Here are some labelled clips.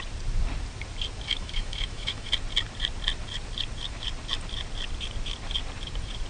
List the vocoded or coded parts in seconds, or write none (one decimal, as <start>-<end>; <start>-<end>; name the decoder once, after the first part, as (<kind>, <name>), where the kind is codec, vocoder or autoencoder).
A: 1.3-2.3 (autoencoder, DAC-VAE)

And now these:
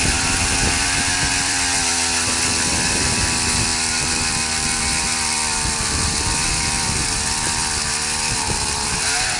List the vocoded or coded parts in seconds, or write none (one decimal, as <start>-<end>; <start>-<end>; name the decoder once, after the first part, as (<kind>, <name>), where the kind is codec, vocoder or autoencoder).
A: 0.0-3.7 (vocoder, BigVGAN v2); 4.8-7.6; 8.3-9.4

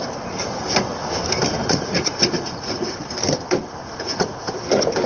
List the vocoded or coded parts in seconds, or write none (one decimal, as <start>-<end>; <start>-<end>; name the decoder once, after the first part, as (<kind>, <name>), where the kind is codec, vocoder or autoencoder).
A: 1.6-3.0 (vocoder, Vocos); 3.8-4.5

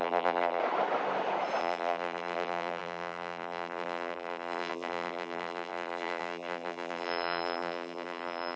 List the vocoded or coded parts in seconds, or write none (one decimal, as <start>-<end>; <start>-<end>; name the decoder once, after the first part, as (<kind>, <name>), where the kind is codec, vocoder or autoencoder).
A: 0.0-0.6 (vocoder, BigVGAN v2); 1.6-8.6

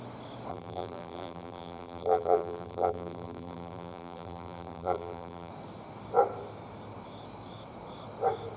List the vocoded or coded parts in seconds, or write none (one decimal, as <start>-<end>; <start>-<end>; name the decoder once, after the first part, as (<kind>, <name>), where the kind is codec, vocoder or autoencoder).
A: 0.5-5.5 (vocoder, BigVGAN v2)